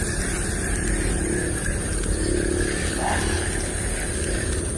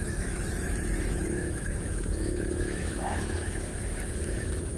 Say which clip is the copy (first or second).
second